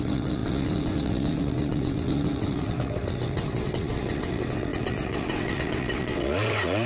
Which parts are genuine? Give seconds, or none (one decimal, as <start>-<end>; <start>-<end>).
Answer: none